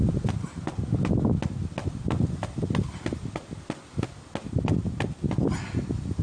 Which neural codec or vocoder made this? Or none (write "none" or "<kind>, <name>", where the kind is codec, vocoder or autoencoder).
none